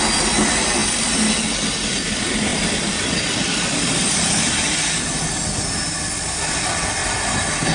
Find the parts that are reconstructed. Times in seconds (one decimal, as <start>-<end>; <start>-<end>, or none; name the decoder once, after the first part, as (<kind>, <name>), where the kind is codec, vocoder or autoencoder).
0.8-1.3 (vocoder, BigVGAN v2); 2.5-4.1